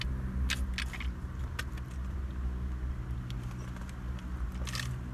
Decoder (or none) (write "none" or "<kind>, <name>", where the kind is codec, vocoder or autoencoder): none